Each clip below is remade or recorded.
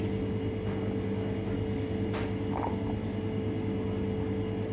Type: recorded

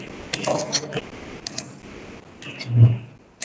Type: recorded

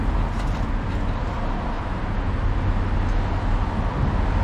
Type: recorded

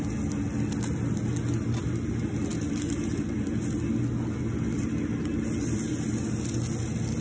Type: recorded